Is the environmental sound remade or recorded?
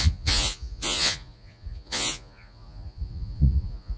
remade